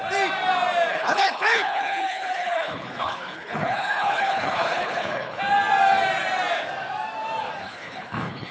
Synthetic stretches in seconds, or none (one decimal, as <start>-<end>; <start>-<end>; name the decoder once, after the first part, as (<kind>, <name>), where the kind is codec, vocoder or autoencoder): 0.9-5.4 (codec, HILCodec); 7.6-8.5